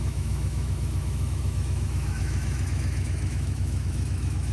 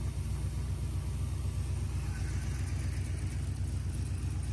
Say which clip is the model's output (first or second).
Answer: first